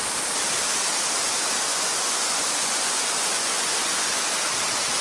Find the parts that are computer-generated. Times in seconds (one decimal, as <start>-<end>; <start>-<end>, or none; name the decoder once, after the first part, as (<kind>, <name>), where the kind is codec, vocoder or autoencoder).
1.7-4.2 (vocoder, Vocos)